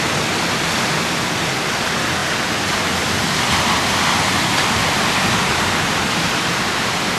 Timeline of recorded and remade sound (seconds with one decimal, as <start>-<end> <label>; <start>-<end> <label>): 0.0-7.2 recorded